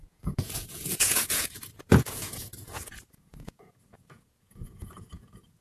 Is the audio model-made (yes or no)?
yes